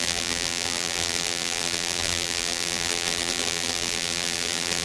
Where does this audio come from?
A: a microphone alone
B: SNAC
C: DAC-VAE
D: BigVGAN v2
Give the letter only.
D